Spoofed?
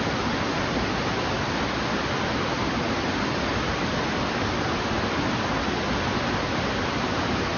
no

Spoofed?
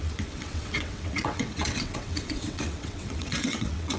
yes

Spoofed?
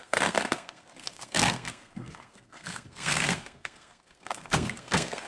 yes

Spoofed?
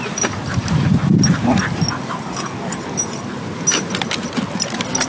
no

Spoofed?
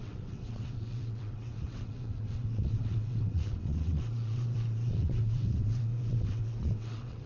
yes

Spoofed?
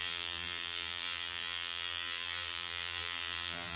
yes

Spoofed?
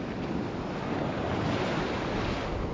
no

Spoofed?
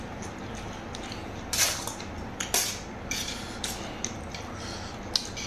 no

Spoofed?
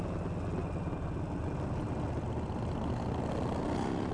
no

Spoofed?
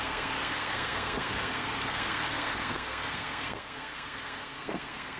yes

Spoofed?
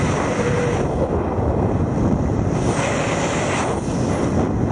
no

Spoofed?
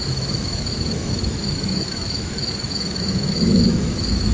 yes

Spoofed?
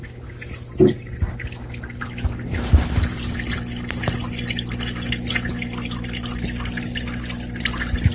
no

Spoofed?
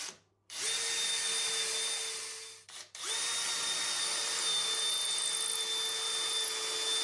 no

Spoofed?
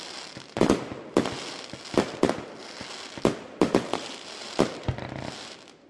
no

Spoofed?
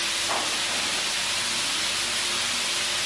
no